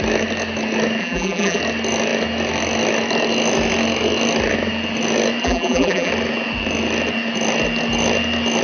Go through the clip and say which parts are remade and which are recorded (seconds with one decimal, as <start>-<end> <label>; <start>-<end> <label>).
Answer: 0.0-1.0 recorded; 1.0-1.6 remade; 1.6-5.4 recorded; 5.4-6.1 remade; 6.1-8.6 recorded